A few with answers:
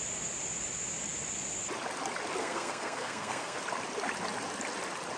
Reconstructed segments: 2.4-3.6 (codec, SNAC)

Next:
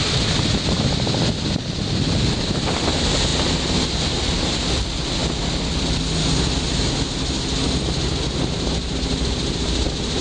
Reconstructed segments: none

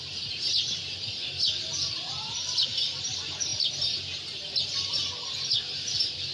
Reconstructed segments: none

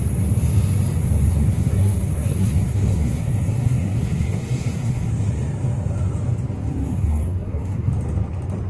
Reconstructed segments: 1.3-5.1 (codec, SNAC); 6.8-7.9

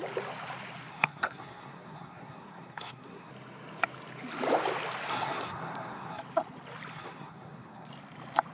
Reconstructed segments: 0.9-3.3 (codec, SNAC); 5.1-6.2; 6.9-7.9